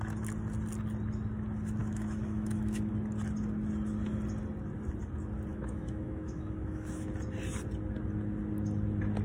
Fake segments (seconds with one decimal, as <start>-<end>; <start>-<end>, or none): 1.8-2.9; 5.5-7.1